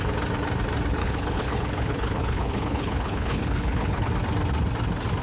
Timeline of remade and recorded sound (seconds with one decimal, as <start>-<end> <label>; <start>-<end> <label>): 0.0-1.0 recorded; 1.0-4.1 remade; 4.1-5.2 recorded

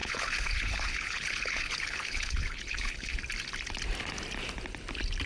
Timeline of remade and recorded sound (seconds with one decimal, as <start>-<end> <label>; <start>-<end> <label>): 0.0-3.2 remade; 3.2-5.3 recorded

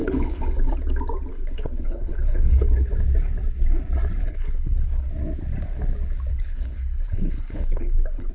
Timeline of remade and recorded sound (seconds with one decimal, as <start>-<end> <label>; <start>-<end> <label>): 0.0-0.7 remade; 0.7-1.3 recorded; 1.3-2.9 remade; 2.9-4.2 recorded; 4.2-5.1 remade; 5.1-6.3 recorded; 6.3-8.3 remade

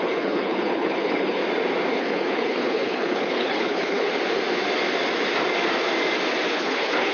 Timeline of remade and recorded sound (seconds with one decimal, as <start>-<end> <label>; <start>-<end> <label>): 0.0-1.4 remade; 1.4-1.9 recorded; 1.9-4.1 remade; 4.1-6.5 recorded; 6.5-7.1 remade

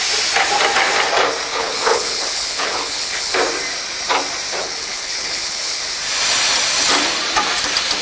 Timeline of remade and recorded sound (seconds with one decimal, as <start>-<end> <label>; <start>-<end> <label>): 0.0-1.5 recorded; 1.5-3.4 remade; 3.4-4.6 recorded; 4.6-5.8 remade; 5.8-8.0 recorded

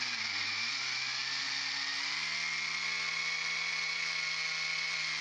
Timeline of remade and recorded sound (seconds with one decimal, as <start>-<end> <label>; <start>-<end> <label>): 0.0-5.2 recorded